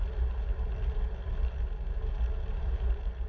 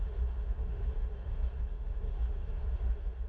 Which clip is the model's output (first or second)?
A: second